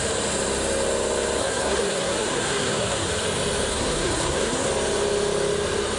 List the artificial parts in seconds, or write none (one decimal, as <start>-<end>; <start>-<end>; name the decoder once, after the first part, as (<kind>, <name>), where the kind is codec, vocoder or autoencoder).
1.4-3.1 (codec, SNAC); 3.7-4.7

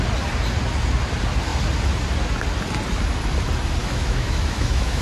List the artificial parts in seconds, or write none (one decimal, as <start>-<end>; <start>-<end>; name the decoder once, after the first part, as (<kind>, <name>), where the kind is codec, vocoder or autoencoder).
3.8-5.0 (autoencoder, DAC-VAE)

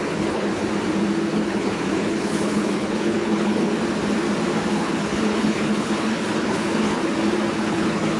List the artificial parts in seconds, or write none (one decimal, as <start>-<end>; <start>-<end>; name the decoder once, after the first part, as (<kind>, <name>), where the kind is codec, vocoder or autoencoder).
0.0-0.6 (codec, HILCodec); 1.3-3.7; 4.7-7.0; 7.6-8.2

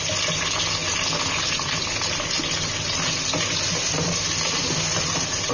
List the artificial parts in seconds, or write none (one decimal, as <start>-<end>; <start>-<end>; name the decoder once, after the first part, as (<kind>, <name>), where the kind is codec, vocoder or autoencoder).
none

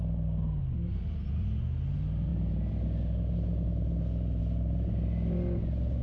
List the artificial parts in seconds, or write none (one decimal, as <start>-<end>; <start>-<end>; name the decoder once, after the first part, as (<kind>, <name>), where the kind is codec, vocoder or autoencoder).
none